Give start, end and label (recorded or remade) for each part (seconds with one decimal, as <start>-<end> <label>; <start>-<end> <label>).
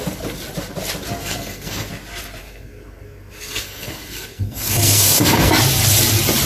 0.0-1.2 recorded; 1.2-1.9 remade; 1.9-2.4 recorded; 2.4-5.5 remade; 5.5-6.5 recorded